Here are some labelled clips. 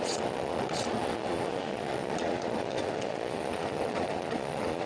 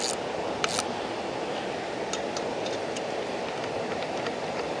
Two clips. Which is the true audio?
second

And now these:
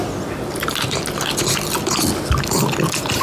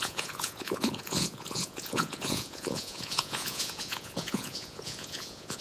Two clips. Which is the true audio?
first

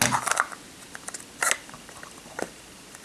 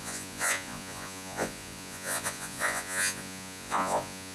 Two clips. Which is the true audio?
first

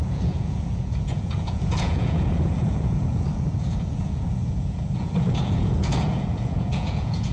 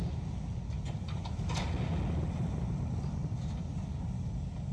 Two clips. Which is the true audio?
second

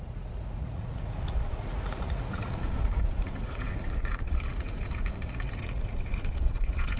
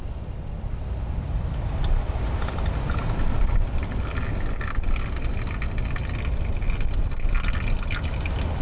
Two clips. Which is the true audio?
second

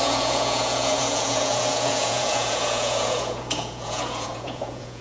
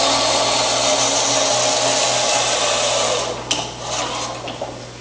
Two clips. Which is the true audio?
second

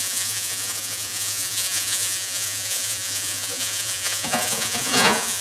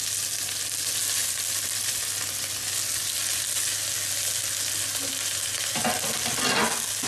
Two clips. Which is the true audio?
second